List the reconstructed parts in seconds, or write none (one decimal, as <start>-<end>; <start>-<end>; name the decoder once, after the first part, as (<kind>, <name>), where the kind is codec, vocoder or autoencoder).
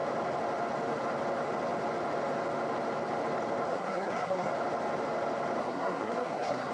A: 3.7-4.5 (codec, SNAC); 5.6-6.7